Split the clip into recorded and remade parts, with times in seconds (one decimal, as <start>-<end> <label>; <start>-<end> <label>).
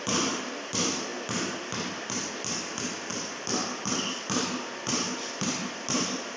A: 0.0-1.1 remade; 1.1-1.7 recorded; 1.7-3.1 remade; 3.1-4.8 recorded; 4.8-6.4 remade